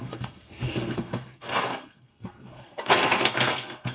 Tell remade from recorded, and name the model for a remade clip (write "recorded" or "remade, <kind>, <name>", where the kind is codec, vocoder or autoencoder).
remade, codec, SNAC